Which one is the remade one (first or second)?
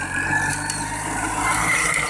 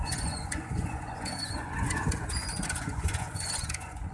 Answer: second